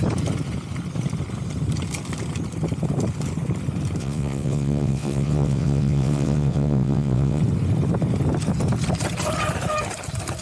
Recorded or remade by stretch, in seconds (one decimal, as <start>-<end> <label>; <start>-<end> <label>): 0.0-4.0 recorded; 4.0-7.4 remade; 7.4-10.4 recorded